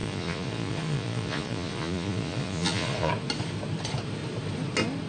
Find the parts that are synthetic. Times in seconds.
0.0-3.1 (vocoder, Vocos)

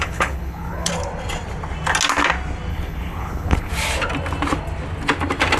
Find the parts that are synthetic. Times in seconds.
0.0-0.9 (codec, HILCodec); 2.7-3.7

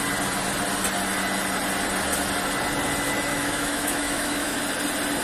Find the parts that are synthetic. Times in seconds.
3.3-4.6 (autoencoder, DAC-VAE)